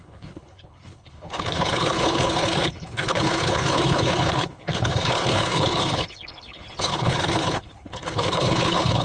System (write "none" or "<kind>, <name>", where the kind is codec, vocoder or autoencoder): codec, HILCodec